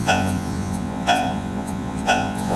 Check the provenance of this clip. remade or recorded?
remade